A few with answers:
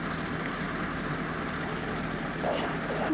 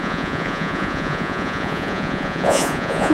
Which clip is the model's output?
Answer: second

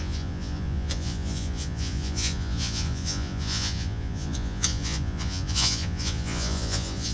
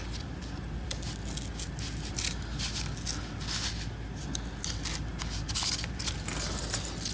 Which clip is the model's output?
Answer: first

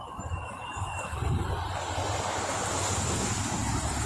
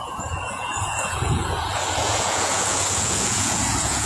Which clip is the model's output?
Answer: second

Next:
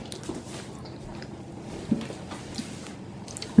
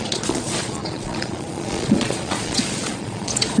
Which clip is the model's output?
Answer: second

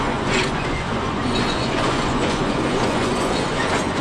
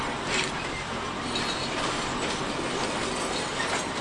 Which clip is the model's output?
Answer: first